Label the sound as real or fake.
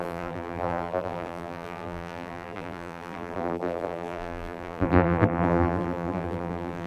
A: fake